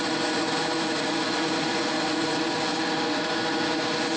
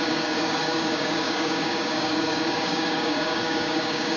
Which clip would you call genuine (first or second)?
first